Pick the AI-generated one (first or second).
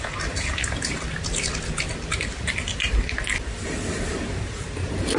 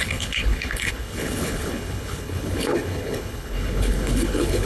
second